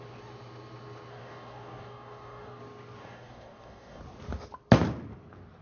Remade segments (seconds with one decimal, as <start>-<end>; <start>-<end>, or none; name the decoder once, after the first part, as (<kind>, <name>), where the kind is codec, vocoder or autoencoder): 1.1-2.6 (codec, DAC); 3.0-4.0